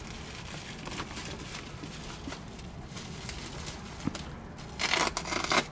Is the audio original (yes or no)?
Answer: yes